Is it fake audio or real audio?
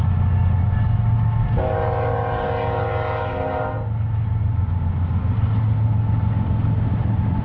real